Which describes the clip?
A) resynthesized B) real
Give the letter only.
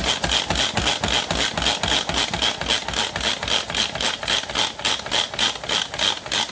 B